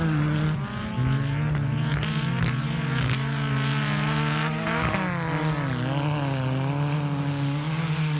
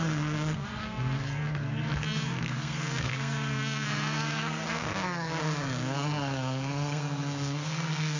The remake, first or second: second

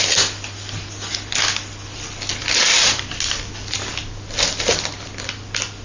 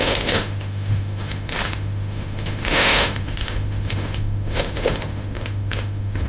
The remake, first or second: second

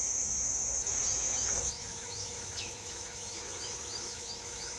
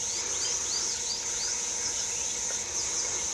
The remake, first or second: first